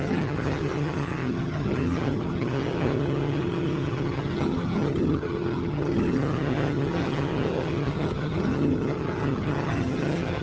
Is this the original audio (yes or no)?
no